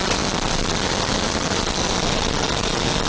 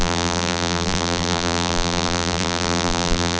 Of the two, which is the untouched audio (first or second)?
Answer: first